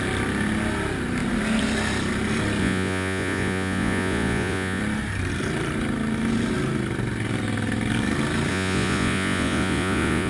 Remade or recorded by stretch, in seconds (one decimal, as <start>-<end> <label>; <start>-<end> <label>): 0.0-2.6 recorded; 2.6-4.8 remade; 4.8-8.5 recorded; 8.5-10.3 remade

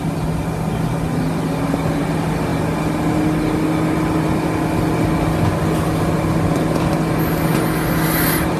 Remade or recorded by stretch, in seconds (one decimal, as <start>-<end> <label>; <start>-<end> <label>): 0.0-8.6 recorded

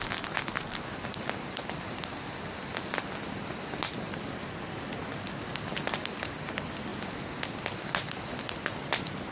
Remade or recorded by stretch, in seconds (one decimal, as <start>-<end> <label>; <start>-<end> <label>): 0.0-9.3 recorded

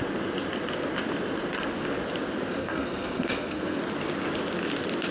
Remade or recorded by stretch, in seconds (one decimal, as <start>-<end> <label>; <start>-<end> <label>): 0.0-2.6 recorded; 2.6-3.8 remade; 3.8-5.1 recorded

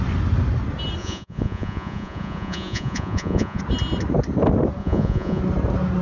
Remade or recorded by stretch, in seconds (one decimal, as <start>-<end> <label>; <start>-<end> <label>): 0.0-1.0 recorded; 1.0-3.6 remade; 3.6-4.8 recorded; 4.8-5.4 remade; 5.4-6.0 recorded

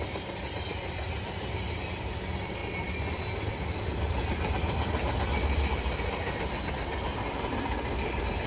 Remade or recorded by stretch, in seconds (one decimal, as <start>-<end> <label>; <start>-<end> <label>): 0.0-8.5 recorded